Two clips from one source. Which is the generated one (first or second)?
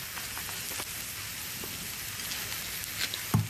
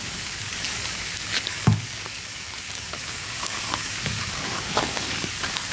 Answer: second